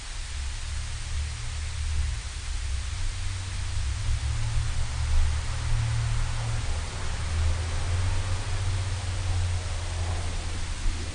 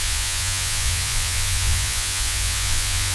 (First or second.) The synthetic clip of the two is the second